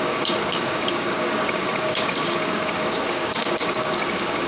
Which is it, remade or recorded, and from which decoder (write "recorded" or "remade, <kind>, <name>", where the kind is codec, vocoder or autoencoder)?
remade, codec, DAC